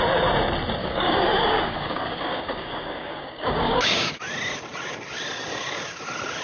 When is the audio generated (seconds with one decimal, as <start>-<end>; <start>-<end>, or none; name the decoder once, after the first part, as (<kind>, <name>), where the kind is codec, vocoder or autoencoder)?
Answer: 0.8-4.1 (codec, DAC)